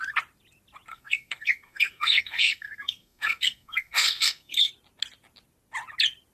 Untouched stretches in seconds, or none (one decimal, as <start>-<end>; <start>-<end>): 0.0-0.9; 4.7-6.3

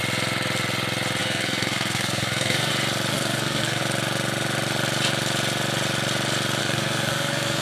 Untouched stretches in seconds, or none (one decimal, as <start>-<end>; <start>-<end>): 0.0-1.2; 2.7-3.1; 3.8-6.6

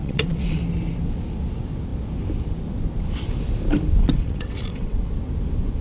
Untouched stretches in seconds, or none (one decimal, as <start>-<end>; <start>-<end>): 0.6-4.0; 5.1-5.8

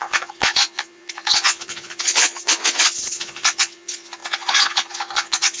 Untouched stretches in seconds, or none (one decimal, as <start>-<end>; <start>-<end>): none

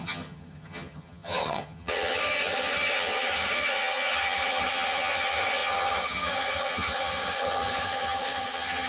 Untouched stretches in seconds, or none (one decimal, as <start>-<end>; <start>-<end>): none

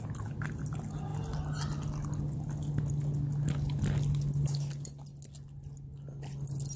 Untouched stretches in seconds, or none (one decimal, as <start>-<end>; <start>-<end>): 0.0-6.8

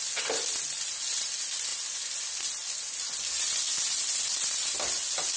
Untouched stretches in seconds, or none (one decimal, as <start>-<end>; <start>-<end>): 0.0-5.4

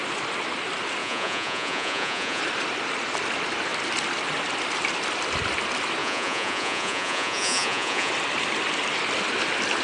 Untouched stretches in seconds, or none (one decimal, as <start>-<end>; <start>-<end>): 0.0-1.0; 2.4-6.0; 8.1-9.8